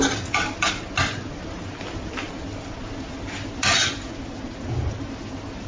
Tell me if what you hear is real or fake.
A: real